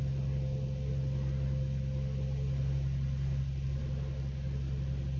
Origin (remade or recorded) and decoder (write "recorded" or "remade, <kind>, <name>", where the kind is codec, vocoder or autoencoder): recorded